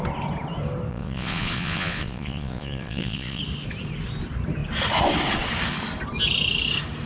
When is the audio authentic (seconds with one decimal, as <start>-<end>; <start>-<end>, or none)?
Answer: 0.0-0.9; 3.4-7.1

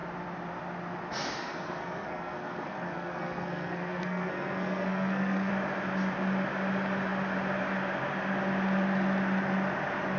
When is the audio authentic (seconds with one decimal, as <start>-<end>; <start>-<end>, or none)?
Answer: 0.0-1.4; 5.5-10.2

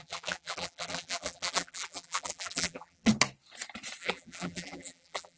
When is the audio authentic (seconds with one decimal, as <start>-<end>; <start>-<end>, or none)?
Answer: 3.1-4.0

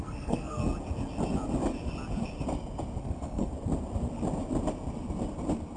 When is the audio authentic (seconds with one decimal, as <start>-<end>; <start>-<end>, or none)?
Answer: 0.6-3.0; 3.5-5.8

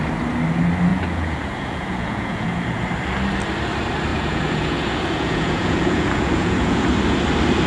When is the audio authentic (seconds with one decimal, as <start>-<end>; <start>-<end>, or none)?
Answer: 0.0-0.9; 2.8-4.1; 6.9-7.7

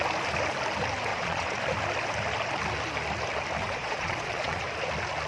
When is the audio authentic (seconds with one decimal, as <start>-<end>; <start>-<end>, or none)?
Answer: 0.0-1.1; 1.6-3.6; 4.6-5.3

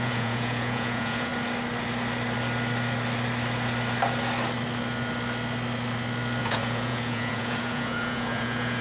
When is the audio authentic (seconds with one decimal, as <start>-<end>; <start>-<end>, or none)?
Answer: 1.3-6.4

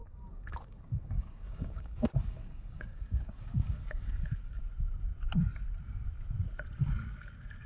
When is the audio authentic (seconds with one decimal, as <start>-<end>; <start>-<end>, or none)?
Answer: 4.6-7.7